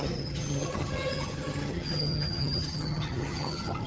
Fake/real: fake